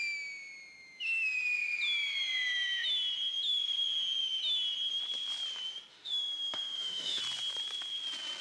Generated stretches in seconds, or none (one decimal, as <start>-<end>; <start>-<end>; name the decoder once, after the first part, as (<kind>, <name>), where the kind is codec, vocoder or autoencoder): 5.9-7.2 (autoencoder, DAC-VAE)